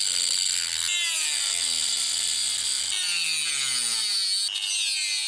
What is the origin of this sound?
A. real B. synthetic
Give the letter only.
A